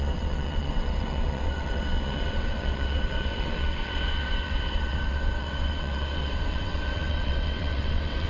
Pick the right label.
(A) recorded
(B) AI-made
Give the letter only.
B